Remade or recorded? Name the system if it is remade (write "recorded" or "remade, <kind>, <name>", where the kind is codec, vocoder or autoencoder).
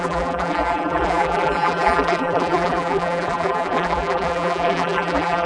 remade, vocoder, BigVGAN v2